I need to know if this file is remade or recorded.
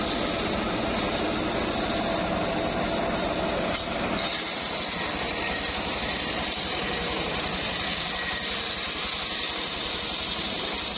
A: recorded